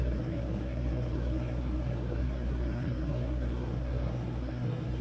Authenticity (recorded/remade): remade